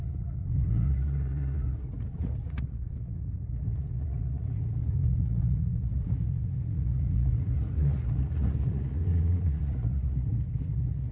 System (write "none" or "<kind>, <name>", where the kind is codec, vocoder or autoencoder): vocoder, Vocos